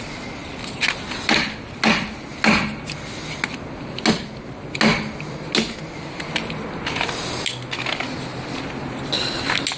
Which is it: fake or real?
real